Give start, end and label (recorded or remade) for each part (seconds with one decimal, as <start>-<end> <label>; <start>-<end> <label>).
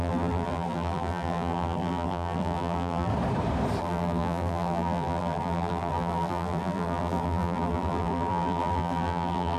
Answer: 0.0-3.1 remade; 3.1-3.8 recorded; 3.8-9.6 remade